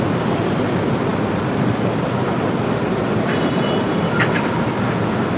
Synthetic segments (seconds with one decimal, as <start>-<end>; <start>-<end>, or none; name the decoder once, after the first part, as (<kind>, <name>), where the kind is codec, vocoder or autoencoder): 1.1-4.2 (vocoder, BigVGAN v2)

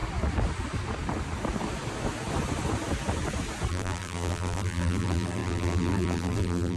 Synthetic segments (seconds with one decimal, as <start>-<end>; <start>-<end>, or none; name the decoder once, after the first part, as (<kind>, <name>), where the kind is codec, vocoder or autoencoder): 3.7-6.8 (vocoder, BigVGAN v2)

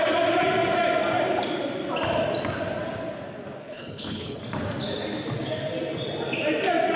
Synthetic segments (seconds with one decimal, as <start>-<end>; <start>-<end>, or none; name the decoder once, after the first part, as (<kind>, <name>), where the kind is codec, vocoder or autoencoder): 3.6-4.4 (codec, HILCodec)

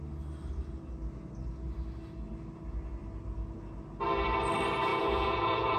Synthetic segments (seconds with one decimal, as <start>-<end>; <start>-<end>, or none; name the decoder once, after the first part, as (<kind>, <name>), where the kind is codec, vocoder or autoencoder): 4.9-5.8 (vocoder, Vocos)

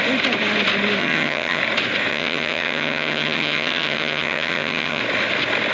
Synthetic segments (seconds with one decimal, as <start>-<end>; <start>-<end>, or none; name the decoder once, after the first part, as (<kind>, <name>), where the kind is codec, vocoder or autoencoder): 1.0-1.6 (vocoder, HiFi-GAN); 2.1-5.0